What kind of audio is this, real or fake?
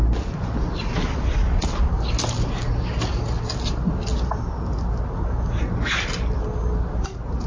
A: real